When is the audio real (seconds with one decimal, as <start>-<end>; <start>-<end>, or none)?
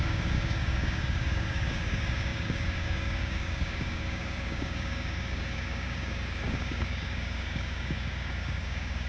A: none